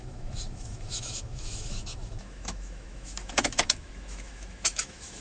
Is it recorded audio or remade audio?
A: remade